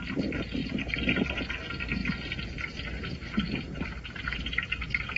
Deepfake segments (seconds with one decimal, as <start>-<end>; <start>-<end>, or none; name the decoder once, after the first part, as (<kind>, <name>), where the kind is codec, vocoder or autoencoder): none